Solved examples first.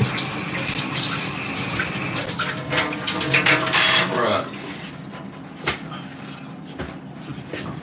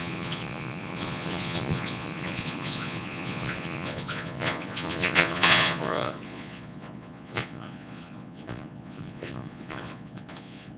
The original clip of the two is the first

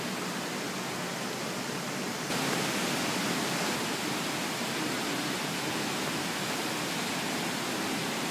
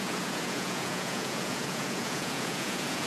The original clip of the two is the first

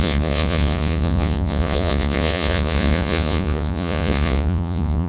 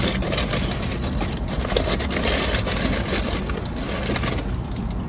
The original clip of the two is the second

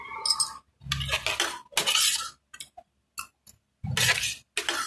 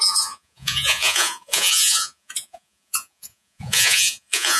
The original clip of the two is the first